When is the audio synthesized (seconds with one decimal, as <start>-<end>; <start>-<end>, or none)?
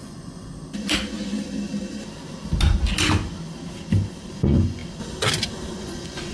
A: 0.0-0.5; 4.3-4.8; 5.8-6.3